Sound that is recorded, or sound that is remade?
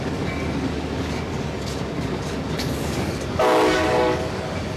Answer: remade